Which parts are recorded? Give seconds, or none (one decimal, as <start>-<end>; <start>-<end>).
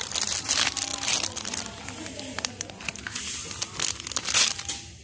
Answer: 0.0-5.0